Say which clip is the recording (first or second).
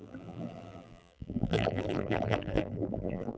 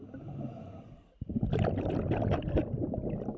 second